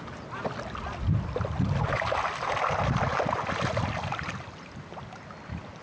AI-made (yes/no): no